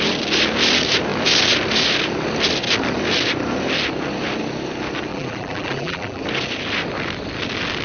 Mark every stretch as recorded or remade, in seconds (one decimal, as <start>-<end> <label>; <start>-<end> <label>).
0.0-5.1 recorded; 5.1-6.2 remade; 6.2-7.8 recorded